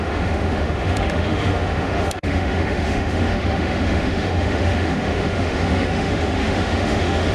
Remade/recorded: remade